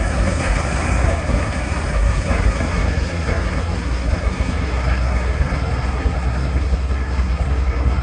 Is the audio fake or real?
fake